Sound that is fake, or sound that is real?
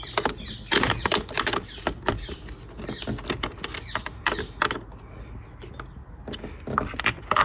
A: real